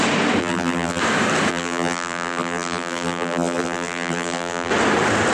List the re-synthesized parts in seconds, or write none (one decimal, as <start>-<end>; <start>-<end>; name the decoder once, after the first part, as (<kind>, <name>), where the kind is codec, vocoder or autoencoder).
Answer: 0.4-1.0 (vocoder, BigVGAN v2); 1.5-4.7